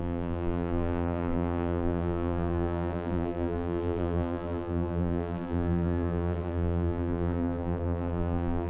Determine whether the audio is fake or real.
fake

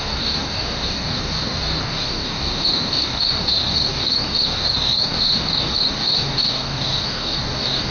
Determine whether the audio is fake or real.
fake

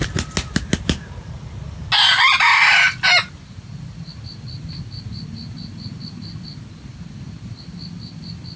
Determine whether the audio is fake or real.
real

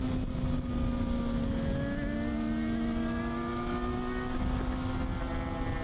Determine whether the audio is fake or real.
real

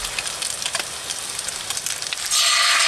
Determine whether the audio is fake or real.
real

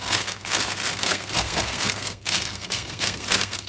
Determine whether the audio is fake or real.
fake